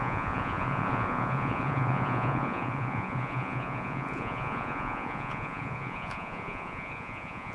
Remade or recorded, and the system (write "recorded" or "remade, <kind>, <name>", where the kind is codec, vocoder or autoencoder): remade, vocoder, Vocos